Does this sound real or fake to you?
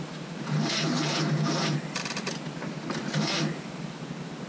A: real